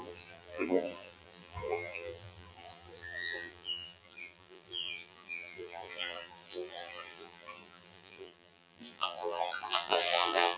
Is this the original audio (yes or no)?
no